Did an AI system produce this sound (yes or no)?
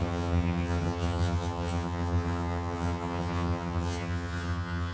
yes